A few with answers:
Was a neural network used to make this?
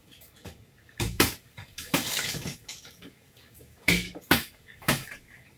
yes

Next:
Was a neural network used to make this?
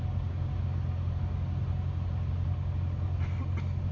no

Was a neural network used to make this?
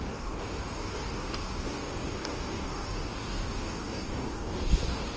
yes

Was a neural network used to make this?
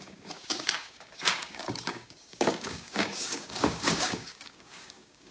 yes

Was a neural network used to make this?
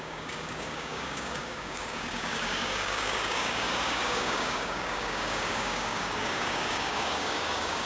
yes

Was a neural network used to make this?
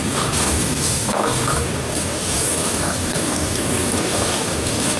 yes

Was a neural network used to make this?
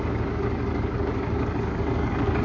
yes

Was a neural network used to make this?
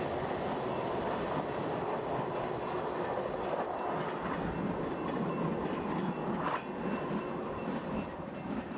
no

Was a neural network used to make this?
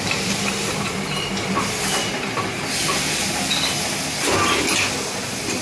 no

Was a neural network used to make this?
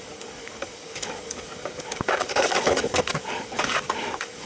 yes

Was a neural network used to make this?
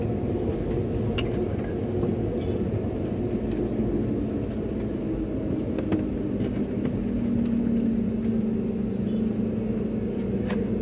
no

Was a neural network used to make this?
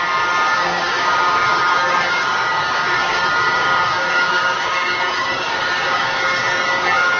yes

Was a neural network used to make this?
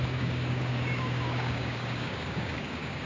yes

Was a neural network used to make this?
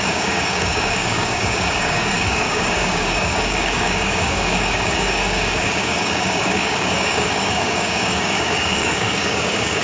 yes